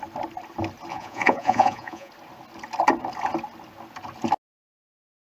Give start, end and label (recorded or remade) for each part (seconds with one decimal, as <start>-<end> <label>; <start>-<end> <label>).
0.0-0.9 recorded; 0.9-2.1 remade; 2.1-5.3 recorded